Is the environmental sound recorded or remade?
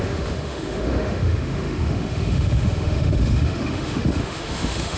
remade